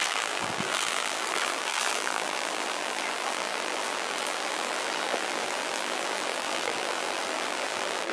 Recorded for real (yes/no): no